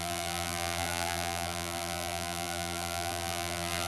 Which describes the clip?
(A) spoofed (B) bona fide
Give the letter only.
A